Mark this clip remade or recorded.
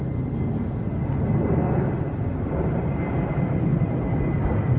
recorded